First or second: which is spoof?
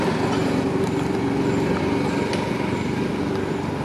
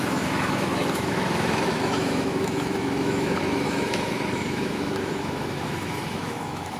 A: second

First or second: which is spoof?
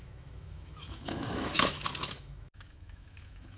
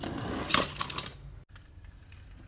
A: first